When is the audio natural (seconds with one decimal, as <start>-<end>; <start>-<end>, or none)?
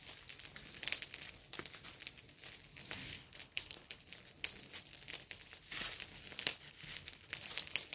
0.0-3.0; 4.0-6.5; 7.3-7.9